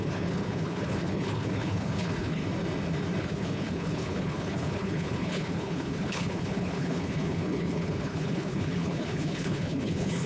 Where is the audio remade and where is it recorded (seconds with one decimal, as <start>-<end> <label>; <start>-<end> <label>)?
0.0-2.4 remade; 2.4-3.2 recorded; 3.2-10.3 remade